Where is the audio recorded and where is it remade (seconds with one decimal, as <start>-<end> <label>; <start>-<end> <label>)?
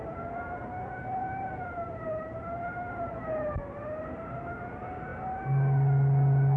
0.0-6.6 recorded